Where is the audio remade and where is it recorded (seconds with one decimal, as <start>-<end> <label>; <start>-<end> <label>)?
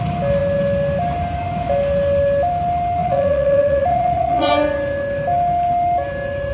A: 0.0-3.0 recorded; 3.0-4.5 remade; 4.5-6.5 recorded